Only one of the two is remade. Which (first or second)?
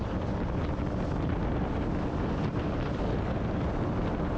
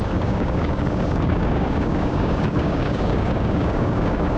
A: second